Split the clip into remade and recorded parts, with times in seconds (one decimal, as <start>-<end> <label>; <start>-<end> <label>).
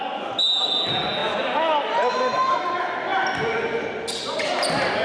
0.0-5.0 recorded